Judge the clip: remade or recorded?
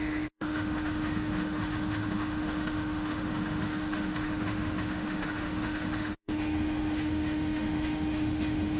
remade